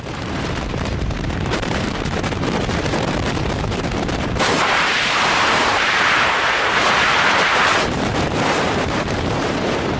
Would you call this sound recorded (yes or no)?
no